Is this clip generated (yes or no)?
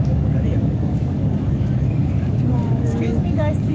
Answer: yes